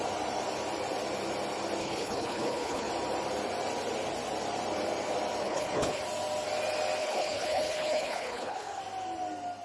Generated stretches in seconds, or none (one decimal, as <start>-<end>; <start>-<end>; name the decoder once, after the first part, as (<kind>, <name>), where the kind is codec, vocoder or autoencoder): 1.8-2.9 (codec, HILCodec); 5.4-6.0; 7.0-8.8